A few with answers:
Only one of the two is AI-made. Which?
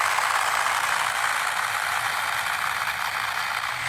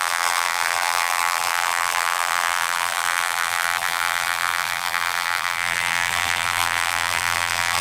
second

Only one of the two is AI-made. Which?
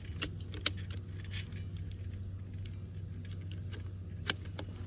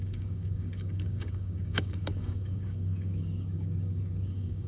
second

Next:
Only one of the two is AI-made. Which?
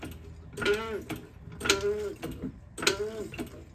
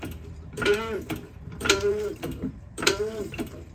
second